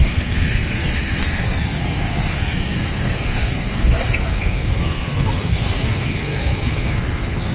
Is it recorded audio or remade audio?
remade